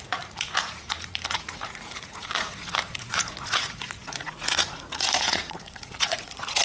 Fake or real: fake